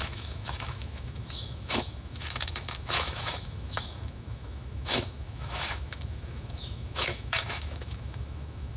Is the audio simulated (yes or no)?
yes